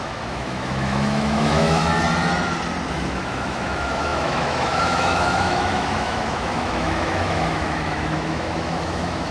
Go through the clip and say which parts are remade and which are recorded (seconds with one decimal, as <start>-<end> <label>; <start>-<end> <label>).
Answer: 0.0-1.8 remade; 1.8-2.9 recorded; 2.9-9.3 remade